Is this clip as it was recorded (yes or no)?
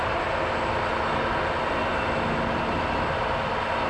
yes